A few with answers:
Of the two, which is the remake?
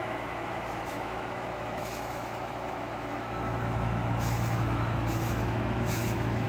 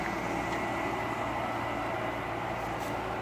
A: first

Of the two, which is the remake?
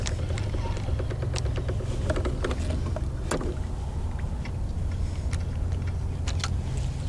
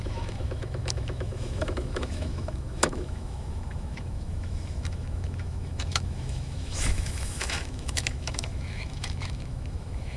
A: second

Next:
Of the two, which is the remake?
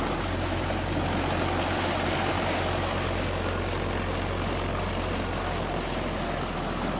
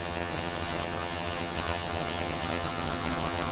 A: second